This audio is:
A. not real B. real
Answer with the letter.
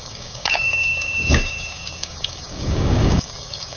A